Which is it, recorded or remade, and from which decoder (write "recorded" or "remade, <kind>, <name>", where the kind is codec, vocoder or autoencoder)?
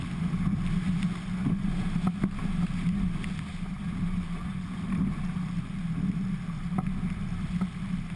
recorded